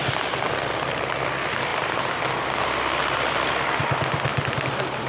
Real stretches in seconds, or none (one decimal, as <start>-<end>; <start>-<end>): 0.0-5.1